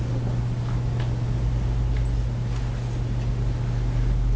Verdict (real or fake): real